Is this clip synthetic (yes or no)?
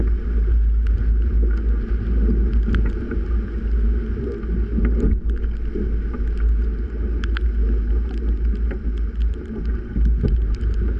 no